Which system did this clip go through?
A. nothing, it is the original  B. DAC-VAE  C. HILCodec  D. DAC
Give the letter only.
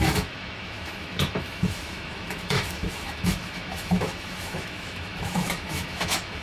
B